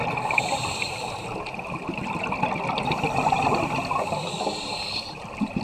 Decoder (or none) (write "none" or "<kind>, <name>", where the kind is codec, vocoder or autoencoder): none